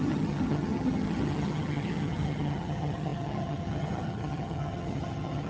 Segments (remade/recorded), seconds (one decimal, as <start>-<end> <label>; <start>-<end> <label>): 0.0-5.5 remade